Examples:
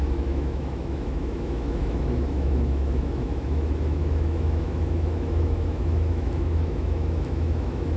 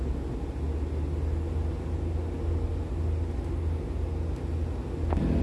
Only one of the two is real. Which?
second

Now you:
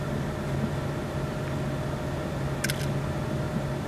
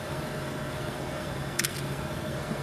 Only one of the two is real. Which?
first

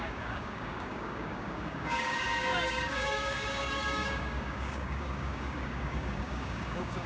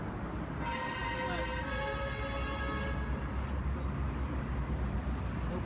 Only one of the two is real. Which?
second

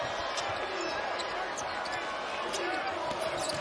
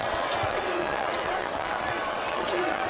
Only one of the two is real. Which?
first